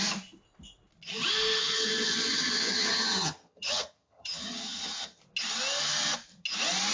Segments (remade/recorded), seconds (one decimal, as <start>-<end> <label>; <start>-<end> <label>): 0.0-1.6 recorded; 1.6-5.2 remade; 5.2-6.9 recorded